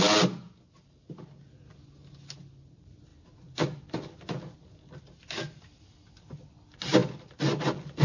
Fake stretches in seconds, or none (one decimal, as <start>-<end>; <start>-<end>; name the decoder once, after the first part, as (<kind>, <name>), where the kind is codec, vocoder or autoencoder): none

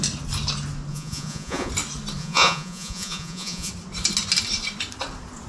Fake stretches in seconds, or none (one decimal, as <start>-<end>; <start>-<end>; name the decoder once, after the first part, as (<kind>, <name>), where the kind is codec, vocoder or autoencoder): 0.9-1.7 (vocoder, Vocos); 2.2-3.7

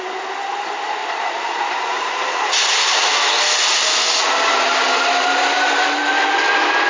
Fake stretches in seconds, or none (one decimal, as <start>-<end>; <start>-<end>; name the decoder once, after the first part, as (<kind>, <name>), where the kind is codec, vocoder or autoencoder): none

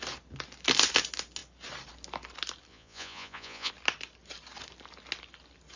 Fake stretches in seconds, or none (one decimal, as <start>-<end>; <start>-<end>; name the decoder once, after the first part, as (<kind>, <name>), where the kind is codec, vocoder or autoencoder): 2.7-3.7 (vocoder, Vocos)

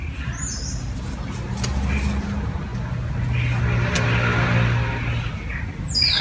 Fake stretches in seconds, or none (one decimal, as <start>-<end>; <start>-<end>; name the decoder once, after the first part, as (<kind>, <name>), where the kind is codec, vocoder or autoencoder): none

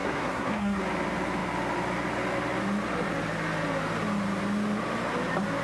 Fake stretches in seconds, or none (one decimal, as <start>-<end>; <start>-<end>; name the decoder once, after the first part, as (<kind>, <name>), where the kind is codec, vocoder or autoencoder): 0.0-0.8 (codec, SNAC)

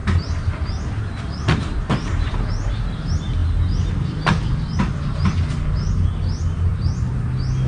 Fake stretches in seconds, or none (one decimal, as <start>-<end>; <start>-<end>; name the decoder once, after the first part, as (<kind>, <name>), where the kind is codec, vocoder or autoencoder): 0.0-2.7 (vocoder, BigVGAN v2); 6.7-7.3

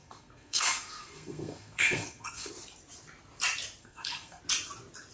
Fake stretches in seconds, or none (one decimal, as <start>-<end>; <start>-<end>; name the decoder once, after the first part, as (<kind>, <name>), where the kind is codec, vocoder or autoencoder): 0.0-2.5 (codec, SNAC); 3.8-4.4